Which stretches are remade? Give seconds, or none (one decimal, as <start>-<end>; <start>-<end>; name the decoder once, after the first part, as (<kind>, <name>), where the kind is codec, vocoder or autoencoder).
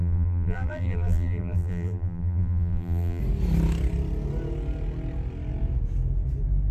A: 0.0-3.2 (vocoder, BigVGAN v2)